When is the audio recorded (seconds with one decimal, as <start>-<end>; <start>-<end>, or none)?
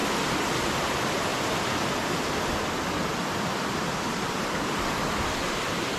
0.0-0.8; 1.3-3.8